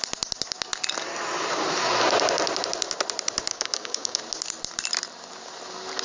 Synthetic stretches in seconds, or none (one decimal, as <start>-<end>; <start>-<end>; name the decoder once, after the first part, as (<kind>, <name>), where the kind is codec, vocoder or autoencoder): 3.5-4.2 (codec, DAC)